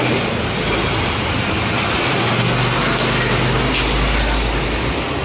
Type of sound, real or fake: real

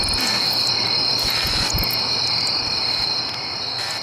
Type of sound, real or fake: real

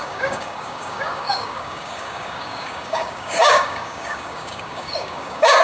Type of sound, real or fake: fake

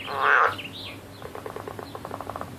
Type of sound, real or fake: real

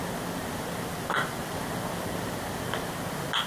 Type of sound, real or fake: real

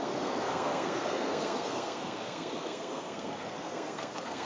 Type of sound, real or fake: fake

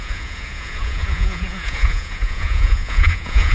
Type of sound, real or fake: fake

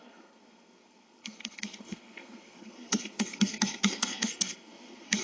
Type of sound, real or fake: fake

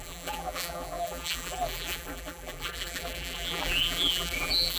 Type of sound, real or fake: fake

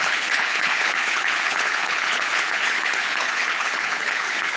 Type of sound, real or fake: fake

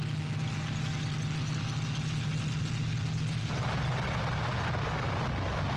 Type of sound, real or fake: real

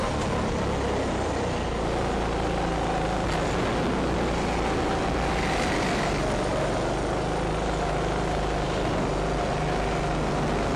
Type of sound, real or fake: real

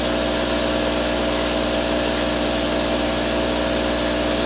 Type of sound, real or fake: real